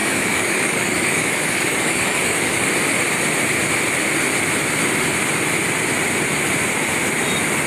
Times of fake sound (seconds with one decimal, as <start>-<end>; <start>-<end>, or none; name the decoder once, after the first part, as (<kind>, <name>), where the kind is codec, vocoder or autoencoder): 0.0-2.7 (codec, DAC)